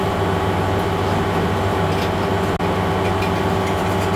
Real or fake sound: real